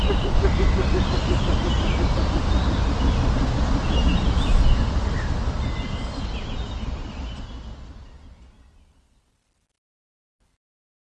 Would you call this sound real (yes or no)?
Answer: yes